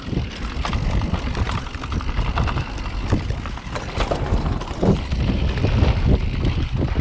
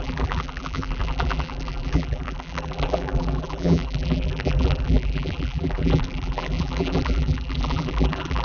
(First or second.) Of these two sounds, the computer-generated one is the second